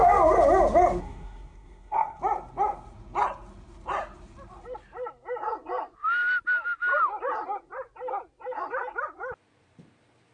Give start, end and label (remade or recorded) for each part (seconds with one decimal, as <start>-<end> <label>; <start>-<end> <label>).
0.0-1.0 recorded; 1.0-2.2 remade; 2.2-10.3 recorded

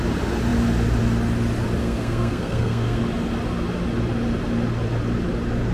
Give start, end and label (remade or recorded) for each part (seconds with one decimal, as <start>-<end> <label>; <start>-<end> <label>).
0.0-1.8 recorded; 1.8-3.0 remade; 3.0-5.7 recorded

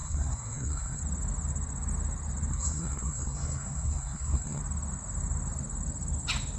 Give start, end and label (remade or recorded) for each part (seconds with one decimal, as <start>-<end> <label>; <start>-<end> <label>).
0.0-1.0 remade; 1.0-2.5 recorded; 2.5-4.6 remade; 4.6-6.6 recorded

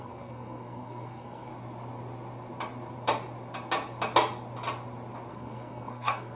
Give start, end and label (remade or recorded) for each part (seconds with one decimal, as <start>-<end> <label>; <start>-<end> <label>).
0.0-1.5 remade; 1.5-5.3 recorded; 5.3-6.4 remade

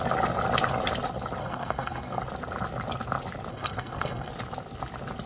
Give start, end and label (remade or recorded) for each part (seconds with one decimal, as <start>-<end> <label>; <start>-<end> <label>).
0.0-1.4 recorded; 1.4-2.2 remade; 2.2-3.5 recorded; 3.5-4.3 remade; 4.3-5.3 recorded

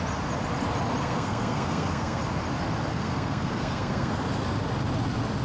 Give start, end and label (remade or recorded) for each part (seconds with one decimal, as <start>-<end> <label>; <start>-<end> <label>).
0.0-1.0 recorded; 1.0-2.2 remade; 2.2-2.9 recorded; 2.9-4.1 remade; 4.1-5.4 recorded

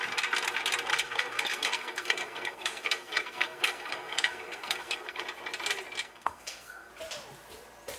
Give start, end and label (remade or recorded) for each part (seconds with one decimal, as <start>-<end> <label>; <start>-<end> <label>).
0.0-0.9 recorded; 0.9-5.2 remade; 5.2-6.0 recorded; 6.0-6.9 remade; 6.9-8.0 recorded